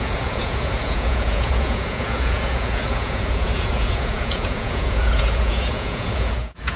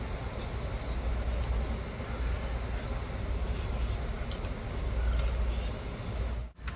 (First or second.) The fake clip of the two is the first